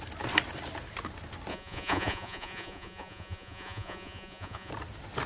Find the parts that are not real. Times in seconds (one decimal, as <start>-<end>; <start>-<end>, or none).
1.5-4.7